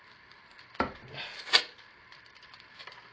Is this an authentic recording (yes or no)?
yes